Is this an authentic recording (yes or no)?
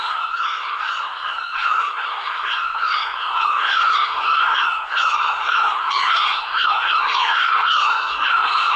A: no